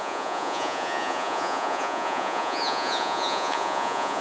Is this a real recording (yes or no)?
no